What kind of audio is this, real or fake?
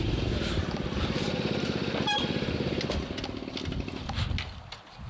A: real